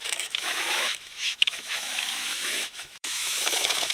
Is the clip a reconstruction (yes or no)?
yes